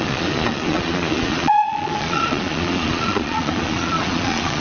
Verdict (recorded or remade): remade